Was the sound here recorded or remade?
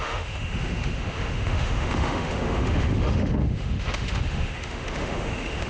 remade